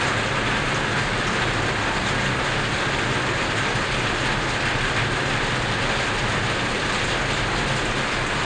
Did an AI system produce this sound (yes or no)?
no